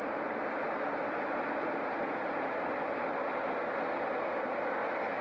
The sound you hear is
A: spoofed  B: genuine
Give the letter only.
B